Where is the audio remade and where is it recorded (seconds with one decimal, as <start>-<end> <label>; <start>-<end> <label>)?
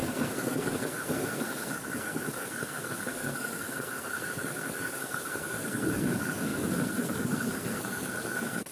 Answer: 0.0-8.7 remade